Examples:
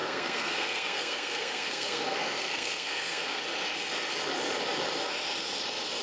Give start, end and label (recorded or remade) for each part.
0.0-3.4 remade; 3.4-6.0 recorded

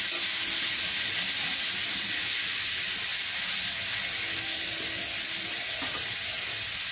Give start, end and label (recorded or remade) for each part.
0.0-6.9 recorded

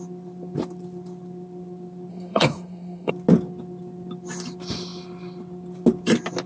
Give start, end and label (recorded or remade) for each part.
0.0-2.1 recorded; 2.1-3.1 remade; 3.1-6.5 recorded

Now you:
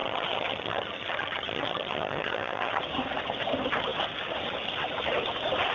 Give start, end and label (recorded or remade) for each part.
0.0-2.8 remade; 2.8-5.7 recorded

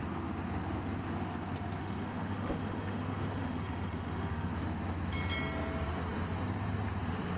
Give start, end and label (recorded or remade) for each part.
0.0-1.8 recorded; 1.8-4.5 remade; 4.5-7.4 recorded

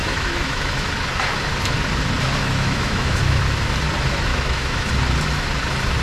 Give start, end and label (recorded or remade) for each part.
0.0-0.9 remade; 0.9-2.4 recorded; 2.4-3.4 remade; 3.4-4.3 recorded; 4.3-4.9 remade; 4.9-6.0 recorded